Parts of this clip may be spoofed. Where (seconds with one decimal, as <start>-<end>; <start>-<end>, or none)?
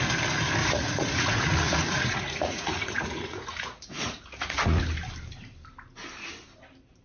0.6-4.8